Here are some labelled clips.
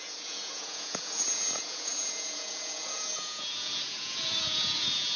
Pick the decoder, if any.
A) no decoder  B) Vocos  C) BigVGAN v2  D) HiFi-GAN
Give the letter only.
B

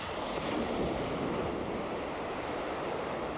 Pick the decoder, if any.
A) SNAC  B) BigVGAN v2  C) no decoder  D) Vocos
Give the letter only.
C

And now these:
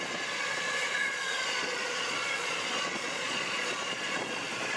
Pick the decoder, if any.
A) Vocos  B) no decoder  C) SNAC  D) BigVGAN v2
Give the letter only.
A